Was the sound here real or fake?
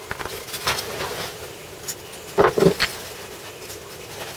real